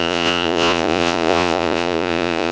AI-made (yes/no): yes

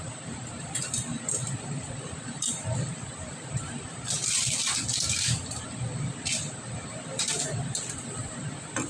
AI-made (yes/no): yes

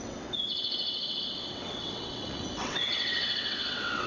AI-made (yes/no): yes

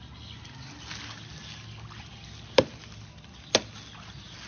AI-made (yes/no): no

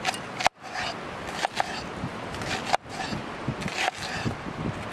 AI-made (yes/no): no